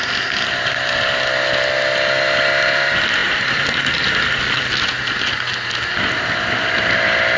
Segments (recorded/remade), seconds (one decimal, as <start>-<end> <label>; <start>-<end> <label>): 0.0-7.4 recorded